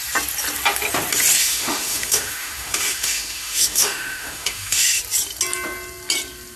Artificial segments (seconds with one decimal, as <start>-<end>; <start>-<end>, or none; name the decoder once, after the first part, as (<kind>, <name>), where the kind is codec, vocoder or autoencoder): 1.4-5.0 (autoencoder, DAC-VAE)